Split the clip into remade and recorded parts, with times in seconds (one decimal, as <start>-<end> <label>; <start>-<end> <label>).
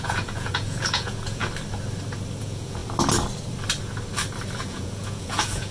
0.0-1.4 remade; 1.4-2.4 recorded; 2.4-2.8 remade; 2.8-4.6 recorded; 4.6-5.7 remade